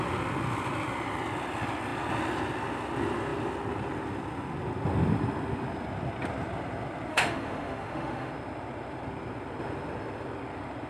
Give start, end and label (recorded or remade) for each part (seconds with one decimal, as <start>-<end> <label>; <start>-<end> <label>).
0.0-7.1 recorded; 7.1-8.3 remade; 8.3-10.9 recorded